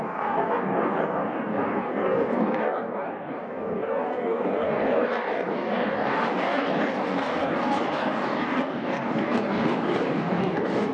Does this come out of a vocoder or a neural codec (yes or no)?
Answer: yes